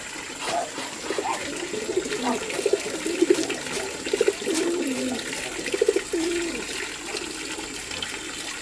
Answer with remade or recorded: recorded